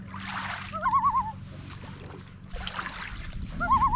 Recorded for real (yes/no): yes